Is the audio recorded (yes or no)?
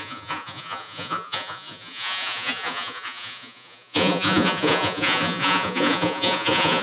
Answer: no